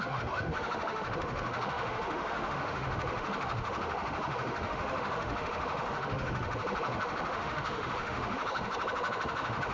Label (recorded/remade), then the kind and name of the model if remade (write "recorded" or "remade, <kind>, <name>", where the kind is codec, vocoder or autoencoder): remade, autoencoder, DAC-VAE